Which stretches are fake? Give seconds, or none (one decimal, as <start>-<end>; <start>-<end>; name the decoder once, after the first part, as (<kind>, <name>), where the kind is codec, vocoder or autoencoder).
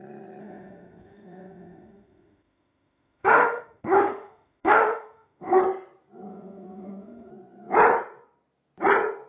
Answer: 0.4-5.6 (autoencoder, DAC-VAE); 6.3-7.3